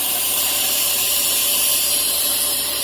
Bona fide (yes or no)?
no